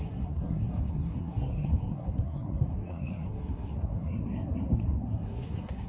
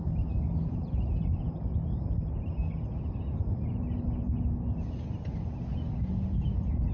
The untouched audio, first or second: second